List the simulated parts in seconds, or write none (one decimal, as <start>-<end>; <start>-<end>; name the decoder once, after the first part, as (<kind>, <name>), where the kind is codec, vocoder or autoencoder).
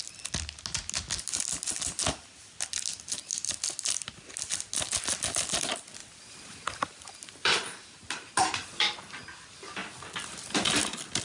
6.0-8.3 (vocoder, BigVGAN v2)